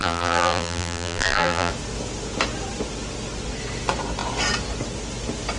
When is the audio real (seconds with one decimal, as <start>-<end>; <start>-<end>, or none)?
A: 1.7-5.6